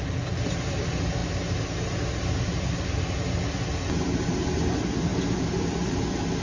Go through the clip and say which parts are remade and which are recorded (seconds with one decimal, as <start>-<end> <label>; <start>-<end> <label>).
0.0-6.4 recorded